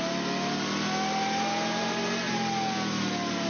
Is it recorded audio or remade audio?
recorded